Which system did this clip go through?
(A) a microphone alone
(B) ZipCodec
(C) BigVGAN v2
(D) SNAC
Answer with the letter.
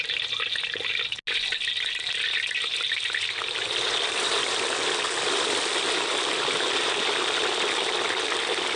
A